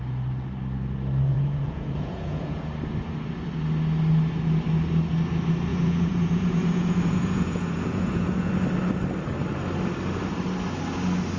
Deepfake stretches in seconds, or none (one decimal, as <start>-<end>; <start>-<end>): 1.3-2.7; 5.7-8.5